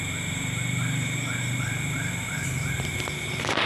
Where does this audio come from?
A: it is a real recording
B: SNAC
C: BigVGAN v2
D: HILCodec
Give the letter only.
C